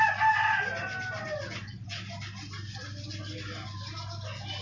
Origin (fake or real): real